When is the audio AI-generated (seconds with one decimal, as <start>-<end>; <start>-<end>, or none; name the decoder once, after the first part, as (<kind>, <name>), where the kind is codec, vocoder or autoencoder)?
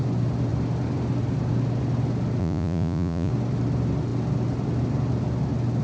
2.4-3.3 (vocoder, Vocos)